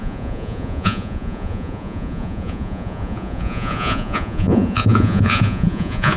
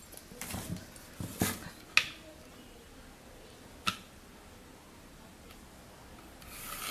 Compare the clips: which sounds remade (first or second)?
first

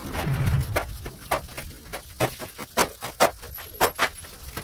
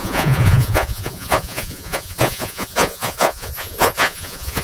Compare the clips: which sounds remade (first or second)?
second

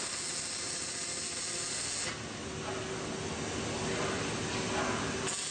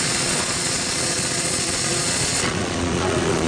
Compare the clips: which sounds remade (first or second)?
second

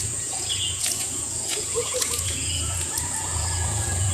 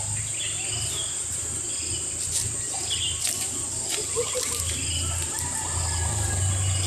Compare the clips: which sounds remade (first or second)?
first